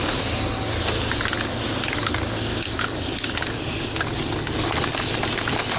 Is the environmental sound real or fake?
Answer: real